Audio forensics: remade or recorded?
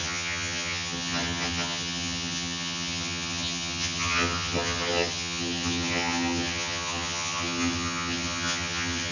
remade